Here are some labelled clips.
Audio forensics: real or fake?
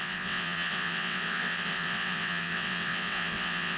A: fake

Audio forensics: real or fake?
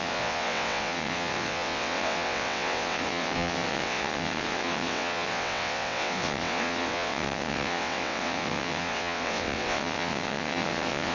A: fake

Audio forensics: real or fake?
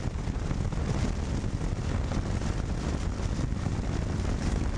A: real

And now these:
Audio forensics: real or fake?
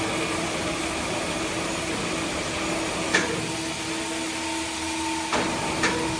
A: real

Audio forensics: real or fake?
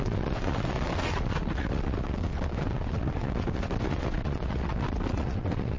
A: fake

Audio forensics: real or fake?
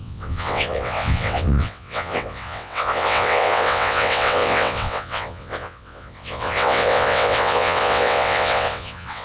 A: fake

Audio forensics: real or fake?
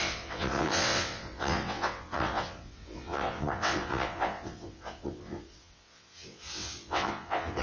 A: fake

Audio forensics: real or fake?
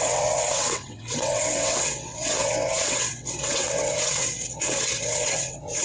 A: fake